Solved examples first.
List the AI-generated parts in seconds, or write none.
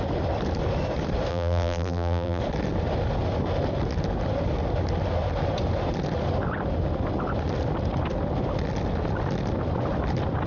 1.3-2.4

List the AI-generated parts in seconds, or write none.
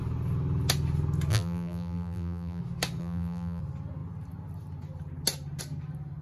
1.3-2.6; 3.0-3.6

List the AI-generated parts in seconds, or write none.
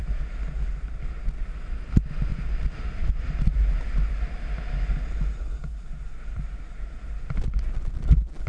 none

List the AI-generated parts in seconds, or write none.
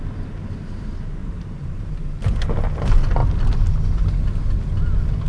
1.2-1.9